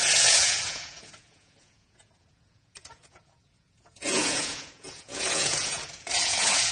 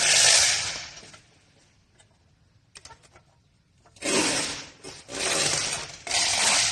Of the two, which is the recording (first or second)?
second